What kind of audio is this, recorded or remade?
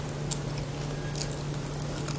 recorded